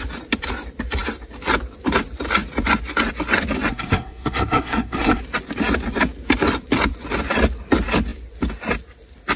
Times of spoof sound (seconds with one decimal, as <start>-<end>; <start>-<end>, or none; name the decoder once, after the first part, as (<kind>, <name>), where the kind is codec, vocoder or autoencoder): 3.7-5.2 (codec, SNAC)